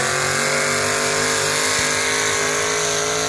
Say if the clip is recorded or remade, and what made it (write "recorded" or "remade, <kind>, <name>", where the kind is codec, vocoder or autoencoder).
recorded